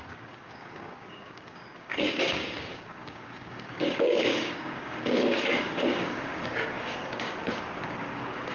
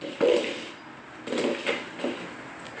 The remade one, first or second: first